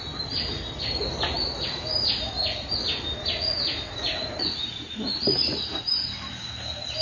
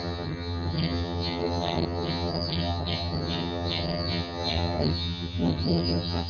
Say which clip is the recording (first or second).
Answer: first